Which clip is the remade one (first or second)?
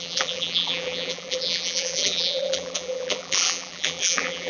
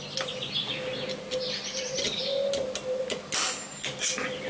first